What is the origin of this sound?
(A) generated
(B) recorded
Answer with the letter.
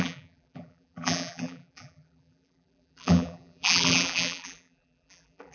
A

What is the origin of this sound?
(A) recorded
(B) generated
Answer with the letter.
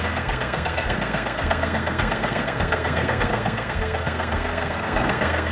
B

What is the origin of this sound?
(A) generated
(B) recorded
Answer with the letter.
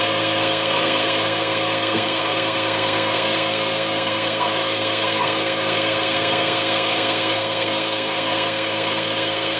A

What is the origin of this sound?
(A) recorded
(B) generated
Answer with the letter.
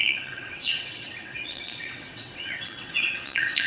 B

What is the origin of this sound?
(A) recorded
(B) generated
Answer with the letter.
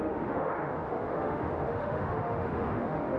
B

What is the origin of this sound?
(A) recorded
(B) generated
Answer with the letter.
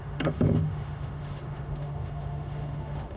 B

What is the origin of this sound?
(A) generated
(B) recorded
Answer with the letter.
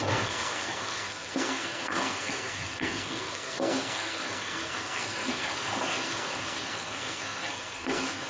A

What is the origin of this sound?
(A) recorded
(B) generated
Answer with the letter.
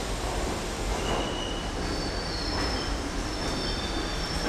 A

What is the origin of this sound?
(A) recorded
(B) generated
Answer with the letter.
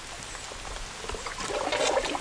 A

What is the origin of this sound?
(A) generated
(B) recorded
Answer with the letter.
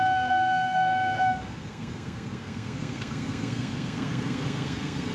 A